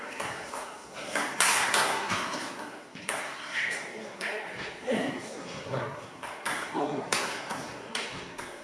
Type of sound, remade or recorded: remade